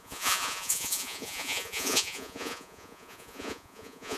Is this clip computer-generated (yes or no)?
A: yes